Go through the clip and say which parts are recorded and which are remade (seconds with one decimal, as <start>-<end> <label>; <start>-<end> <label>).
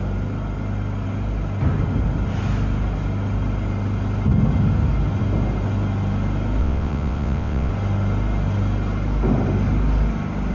0.0-6.6 recorded; 6.6-7.7 remade; 7.7-10.5 recorded